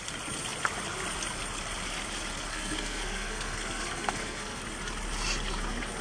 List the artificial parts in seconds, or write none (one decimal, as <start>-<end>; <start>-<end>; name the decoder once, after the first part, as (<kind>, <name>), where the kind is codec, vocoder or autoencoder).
2.5-4.6 (codec, SNAC)